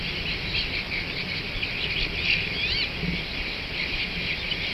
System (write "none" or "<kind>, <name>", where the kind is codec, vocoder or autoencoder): none